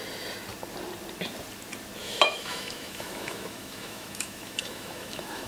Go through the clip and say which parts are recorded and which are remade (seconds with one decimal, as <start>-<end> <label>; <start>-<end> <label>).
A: 0.0-2.0 recorded; 2.0-5.5 remade